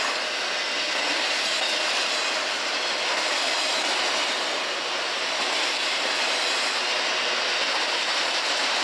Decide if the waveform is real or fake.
real